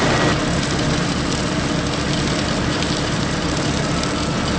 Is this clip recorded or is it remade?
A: recorded